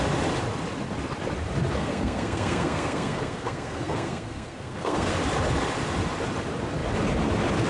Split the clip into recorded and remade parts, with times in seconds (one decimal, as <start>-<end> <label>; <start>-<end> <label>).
0.0-1.8 recorded; 1.8-5.1 remade; 5.1-7.7 recorded